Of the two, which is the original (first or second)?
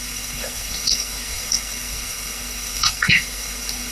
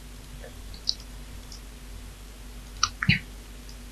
second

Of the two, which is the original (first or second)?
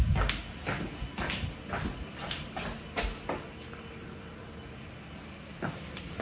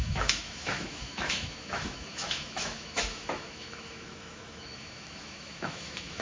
first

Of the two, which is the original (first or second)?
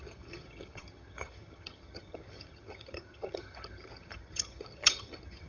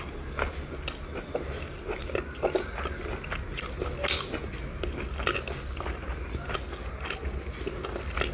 second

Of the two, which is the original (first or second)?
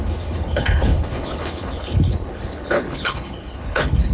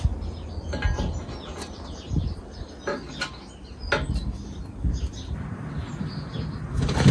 second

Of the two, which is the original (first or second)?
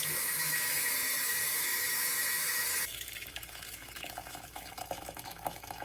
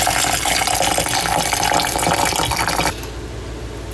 second